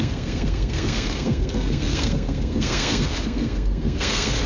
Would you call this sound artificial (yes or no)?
yes